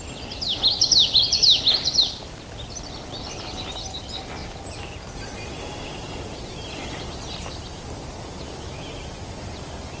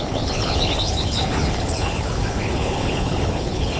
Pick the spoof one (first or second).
second